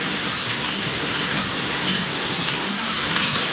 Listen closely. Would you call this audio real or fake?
fake